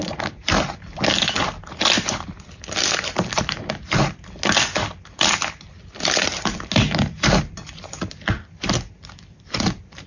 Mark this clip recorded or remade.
recorded